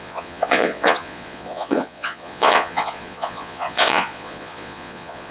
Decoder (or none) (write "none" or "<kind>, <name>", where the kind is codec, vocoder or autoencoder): vocoder, Vocos